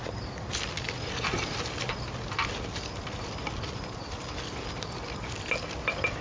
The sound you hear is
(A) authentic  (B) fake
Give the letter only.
A